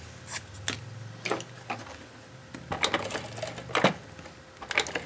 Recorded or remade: recorded